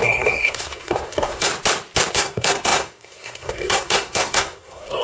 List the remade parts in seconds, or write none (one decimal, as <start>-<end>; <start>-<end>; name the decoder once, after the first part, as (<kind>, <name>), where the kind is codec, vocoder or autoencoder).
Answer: 0.0-1.5 (codec, SNAC); 2.1-5.0